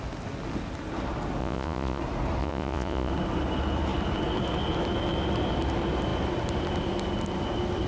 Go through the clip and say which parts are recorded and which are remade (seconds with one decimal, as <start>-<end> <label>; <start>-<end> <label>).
0.0-1.4 recorded; 1.4-2.0 remade; 2.0-2.4 recorded; 2.4-3.1 remade; 3.1-7.9 recorded